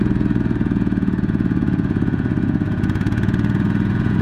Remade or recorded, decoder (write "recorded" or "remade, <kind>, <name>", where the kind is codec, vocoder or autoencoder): remade, vocoder, Vocos